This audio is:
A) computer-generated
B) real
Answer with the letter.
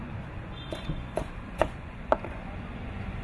A